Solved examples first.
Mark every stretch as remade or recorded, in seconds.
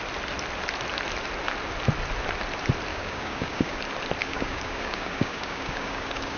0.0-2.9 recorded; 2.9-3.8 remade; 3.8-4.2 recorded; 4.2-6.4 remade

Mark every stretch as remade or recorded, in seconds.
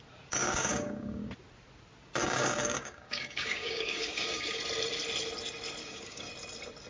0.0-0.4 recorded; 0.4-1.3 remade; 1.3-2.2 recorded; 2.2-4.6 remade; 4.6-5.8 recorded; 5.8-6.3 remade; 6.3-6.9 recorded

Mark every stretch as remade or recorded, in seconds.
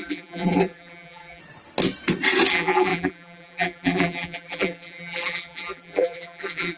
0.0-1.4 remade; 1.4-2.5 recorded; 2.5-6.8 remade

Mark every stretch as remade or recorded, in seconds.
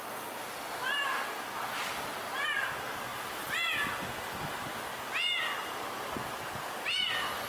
0.0-7.5 recorded